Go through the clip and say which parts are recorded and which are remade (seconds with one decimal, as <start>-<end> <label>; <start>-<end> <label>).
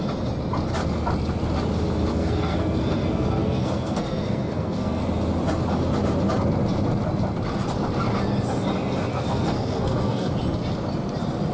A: 0.0-2.1 recorded; 2.1-5.0 remade; 5.0-9.1 recorded; 9.1-10.3 remade; 10.3-11.5 recorded